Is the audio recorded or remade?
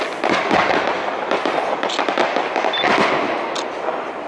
recorded